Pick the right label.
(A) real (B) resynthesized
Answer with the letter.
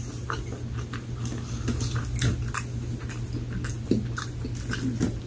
A